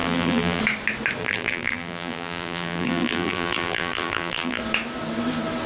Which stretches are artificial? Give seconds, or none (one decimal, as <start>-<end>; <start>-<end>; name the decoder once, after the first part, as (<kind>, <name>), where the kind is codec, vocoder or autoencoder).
0.0-0.6 (vocoder, BigVGAN v2); 1.2-4.6